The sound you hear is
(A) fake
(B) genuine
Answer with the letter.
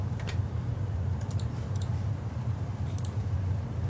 A